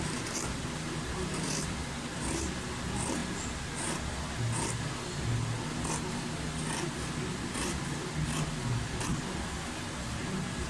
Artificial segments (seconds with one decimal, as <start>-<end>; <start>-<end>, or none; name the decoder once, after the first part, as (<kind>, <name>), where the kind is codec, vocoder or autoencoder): 0.0-9.1 (vocoder, BigVGAN v2)